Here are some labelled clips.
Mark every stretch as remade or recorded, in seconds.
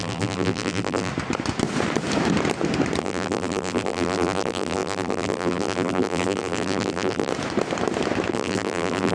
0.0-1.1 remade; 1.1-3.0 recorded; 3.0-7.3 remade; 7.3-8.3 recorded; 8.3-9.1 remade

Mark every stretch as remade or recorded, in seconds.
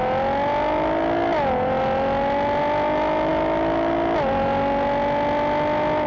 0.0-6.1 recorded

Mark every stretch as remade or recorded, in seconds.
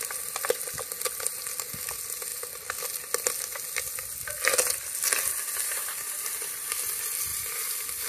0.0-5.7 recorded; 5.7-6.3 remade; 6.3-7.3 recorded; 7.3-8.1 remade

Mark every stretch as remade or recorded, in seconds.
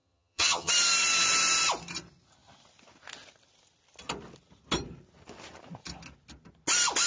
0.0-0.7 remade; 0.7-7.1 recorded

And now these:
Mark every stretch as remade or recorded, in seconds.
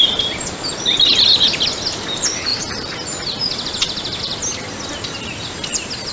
0.0-6.1 recorded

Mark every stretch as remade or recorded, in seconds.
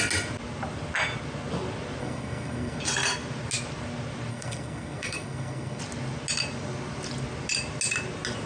0.0-2.0 recorded; 2.0-2.8 remade; 2.8-4.3 recorded; 4.3-5.8 remade; 5.8-8.5 recorded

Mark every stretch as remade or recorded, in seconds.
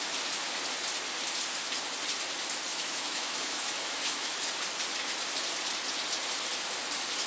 0.0-2.7 recorded; 2.7-4.5 remade; 4.5-7.3 recorded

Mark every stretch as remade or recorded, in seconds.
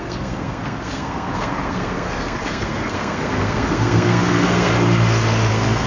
0.0-4.7 remade; 4.7-5.5 recorded; 5.5-5.9 remade